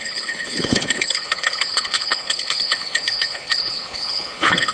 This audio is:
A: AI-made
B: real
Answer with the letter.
A